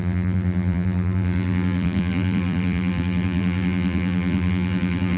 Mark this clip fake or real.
fake